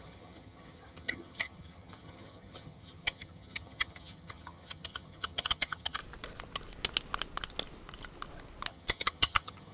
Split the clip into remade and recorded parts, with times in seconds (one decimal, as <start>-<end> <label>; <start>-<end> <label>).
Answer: 0.0-6.0 remade; 6.0-8.7 recorded; 8.7-9.7 remade